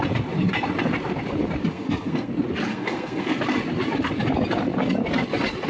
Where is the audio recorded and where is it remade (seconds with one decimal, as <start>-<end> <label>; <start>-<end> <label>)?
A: 0.0-1.7 recorded; 1.7-2.3 remade; 2.3-2.7 recorded; 2.7-3.4 remade; 3.4-5.7 recorded